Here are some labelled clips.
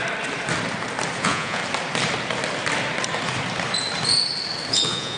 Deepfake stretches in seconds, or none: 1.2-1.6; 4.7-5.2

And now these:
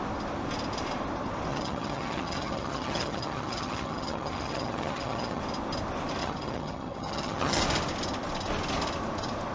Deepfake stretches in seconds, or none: 1.5-5.4; 6.2-7.6

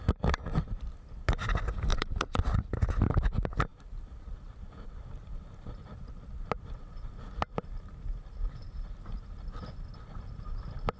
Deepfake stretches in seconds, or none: 1.9-2.7